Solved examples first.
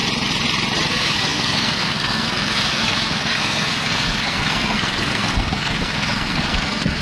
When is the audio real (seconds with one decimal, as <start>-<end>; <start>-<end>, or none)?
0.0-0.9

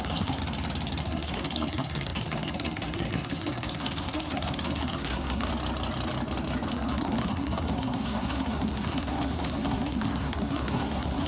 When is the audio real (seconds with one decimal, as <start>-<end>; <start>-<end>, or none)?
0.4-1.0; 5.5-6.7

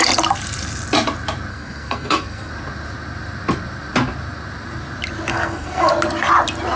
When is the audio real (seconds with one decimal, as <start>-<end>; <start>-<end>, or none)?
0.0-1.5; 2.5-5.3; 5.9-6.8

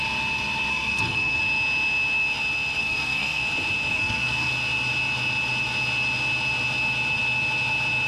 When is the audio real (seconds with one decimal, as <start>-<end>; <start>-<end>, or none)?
0.0-0.7; 1.4-2.8; 3.4-3.9; 4.5-8.1

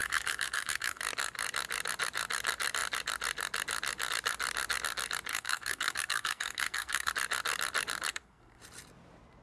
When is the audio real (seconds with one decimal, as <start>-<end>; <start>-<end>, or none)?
1.0-5.3; 7.1-8.1; 8.6-9.4

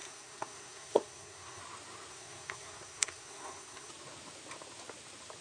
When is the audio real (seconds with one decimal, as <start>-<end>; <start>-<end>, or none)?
1.6-2.1; 3.9-5.4